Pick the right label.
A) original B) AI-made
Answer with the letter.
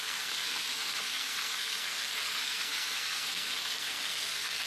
B